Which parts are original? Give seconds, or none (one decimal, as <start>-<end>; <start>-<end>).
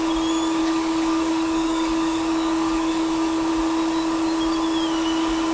0.0-0.6; 3.5-5.5